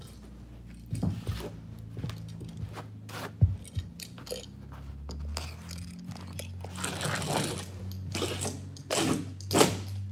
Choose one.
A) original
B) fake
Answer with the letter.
A